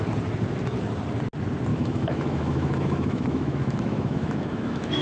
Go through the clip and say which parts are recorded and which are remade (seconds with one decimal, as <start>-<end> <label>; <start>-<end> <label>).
0.0-1.7 recorded; 1.7-5.0 remade